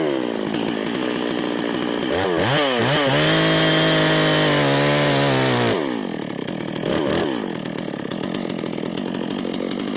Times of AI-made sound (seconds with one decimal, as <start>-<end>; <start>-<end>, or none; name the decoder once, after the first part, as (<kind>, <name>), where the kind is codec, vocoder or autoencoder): none